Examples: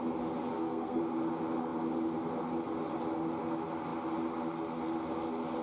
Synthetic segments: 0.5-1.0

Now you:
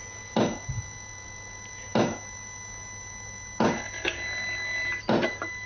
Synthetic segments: none